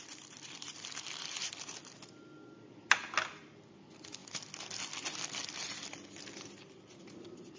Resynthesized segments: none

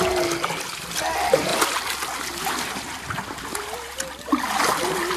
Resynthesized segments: none

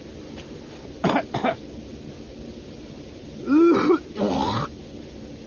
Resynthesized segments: none

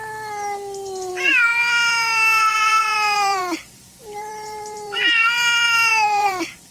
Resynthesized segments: 1.1-6.7

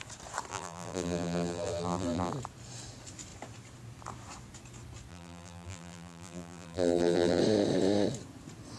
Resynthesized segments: 0.5-2.3; 5.1-7.4

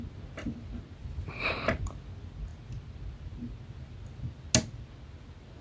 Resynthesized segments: 1.0-1.5

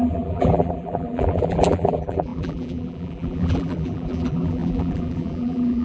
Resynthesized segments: 0.0-5.8